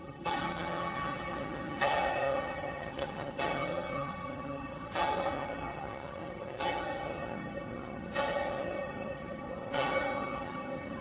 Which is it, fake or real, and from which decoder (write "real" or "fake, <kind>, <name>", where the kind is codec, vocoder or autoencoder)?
fake, vocoder, HiFi-GAN